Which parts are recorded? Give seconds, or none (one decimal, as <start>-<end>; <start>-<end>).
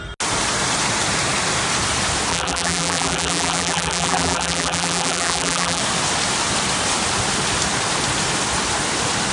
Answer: 0.0-2.3; 5.8-9.3